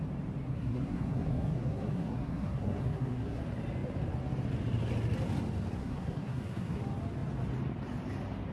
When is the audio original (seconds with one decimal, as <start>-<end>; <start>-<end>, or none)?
0.0-0.4; 3.4-5.8; 6.8-8.5